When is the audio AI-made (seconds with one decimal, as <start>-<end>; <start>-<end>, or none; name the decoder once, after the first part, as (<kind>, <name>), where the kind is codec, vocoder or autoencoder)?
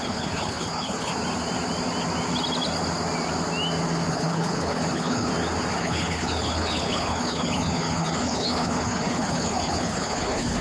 0.0-1.1 (codec, HILCodec); 4.1-5.3; 5.8-10.6